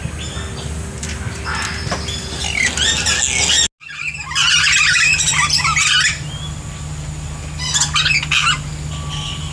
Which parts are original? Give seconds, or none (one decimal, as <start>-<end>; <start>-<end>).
0.0-9.5